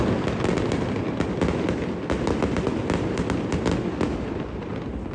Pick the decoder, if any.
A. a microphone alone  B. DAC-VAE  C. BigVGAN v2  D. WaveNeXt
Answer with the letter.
A